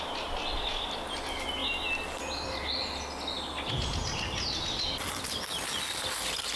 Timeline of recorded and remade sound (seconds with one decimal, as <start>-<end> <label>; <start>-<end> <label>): 0.0-6.6 recorded